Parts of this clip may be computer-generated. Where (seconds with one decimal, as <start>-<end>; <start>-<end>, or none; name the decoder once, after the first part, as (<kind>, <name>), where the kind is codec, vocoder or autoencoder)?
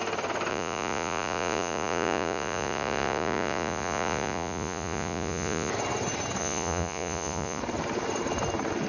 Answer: 0.5-5.7 (vocoder, Vocos); 6.4-7.6